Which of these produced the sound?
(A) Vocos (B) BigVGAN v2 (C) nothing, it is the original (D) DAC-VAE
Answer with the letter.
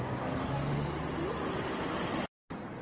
C